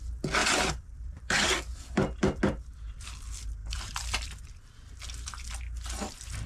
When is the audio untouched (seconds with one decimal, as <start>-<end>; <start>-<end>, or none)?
0.0-0.4; 2.4-3.6; 4.5-6.5